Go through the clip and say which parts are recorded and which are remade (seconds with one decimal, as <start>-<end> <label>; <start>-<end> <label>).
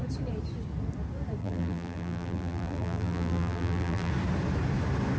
0.0-1.4 recorded; 1.4-4.1 remade; 4.1-5.2 recorded